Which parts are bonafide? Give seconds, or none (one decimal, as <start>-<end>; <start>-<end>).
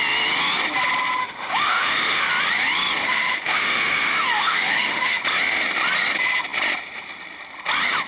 0.0-1.2; 2.3-3.0; 5.2-8.1